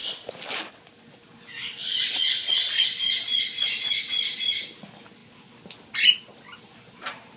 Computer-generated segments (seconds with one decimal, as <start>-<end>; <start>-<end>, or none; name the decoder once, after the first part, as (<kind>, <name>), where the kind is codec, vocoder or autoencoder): none